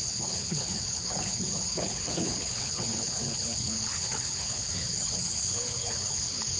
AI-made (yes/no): yes